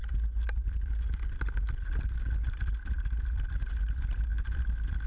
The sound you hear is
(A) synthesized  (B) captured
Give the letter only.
B